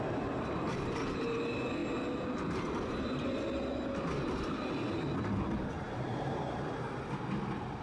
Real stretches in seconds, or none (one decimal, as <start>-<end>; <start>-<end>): 0.0-7.8